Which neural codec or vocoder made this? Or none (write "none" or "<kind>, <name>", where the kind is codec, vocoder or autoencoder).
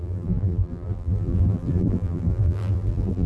vocoder, BigVGAN v2